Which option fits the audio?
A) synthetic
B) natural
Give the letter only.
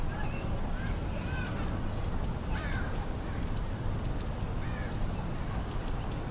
B